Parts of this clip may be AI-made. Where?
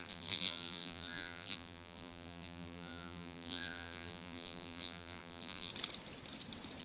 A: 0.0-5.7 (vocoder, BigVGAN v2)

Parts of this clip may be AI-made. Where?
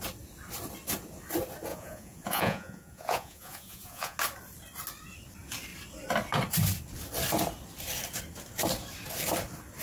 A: 1.7-4.2 (vocoder, Vocos)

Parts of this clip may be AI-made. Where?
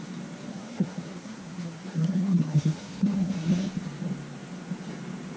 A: 0.5-3.7 (codec, SNAC)